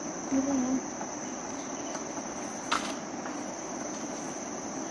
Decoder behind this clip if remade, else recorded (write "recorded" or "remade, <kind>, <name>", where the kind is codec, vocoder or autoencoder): recorded